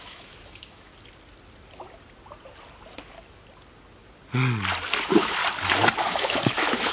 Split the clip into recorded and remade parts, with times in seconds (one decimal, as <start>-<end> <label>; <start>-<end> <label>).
0.0-0.9 remade; 0.9-5.0 recorded; 5.0-5.4 remade; 5.4-6.1 recorded; 6.1-6.9 remade

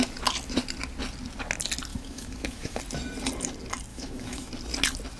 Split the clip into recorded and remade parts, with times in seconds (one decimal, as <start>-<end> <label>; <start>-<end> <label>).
0.0-1.9 recorded; 1.9-2.8 remade; 2.8-3.9 recorded; 3.9-4.5 remade; 4.5-5.2 recorded

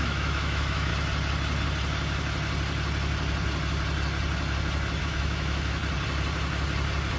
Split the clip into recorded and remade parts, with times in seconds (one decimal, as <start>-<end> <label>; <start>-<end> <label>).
0.0-0.9 remade; 0.9-5.0 recorded; 5.0-5.8 remade; 5.8-7.2 recorded